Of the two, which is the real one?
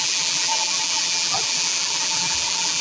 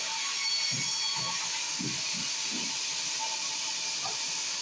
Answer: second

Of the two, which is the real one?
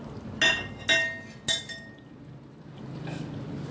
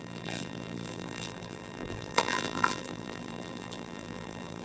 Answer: first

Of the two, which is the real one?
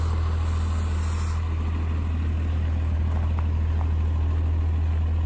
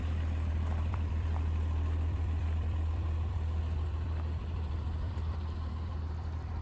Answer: first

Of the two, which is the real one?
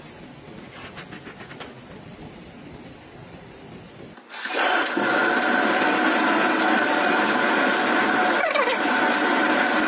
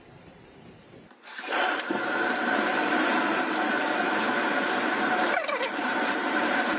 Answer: first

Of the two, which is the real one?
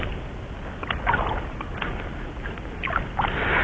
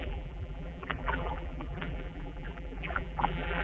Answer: first